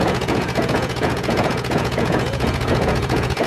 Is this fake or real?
fake